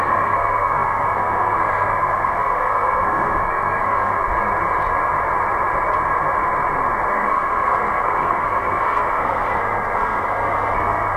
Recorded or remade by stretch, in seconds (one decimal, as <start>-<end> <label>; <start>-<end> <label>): 0.0-4.3 remade; 4.3-7.1 recorded; 7.1-11.2 remade